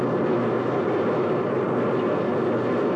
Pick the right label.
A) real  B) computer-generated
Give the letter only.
A